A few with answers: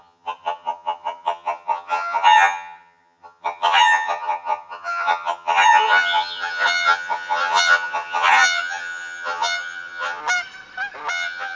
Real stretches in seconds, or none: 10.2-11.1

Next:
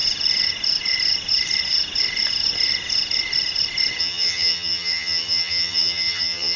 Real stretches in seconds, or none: 0.0-4.0

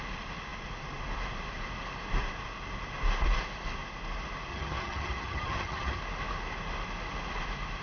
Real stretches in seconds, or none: 0.0-4.5; 6.0-7.8